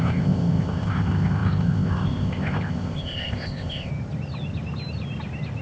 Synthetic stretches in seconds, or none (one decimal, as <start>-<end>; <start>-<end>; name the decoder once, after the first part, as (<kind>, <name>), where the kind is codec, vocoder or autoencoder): 0.0-3.9 (codec, ZipCodec)